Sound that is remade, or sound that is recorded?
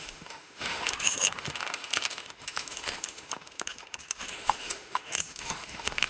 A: remade